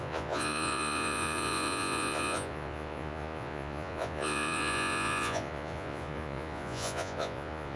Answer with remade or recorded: remade